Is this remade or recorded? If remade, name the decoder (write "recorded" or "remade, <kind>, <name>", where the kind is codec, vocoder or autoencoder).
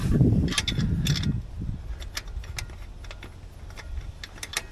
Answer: recorded